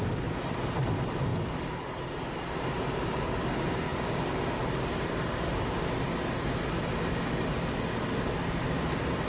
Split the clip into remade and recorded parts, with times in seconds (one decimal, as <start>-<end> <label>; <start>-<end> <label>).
0.0-9.3 recorded